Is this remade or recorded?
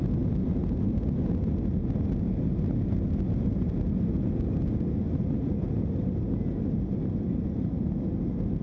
recorded